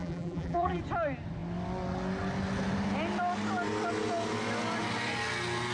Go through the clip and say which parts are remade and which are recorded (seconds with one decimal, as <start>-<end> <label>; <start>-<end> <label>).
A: 0.0-0.8 remade; 0.8-5.7 recorded